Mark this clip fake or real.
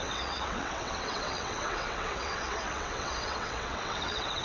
fake